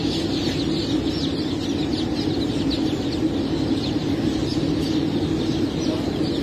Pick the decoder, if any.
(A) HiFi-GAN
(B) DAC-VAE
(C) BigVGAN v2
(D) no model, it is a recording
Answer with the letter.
D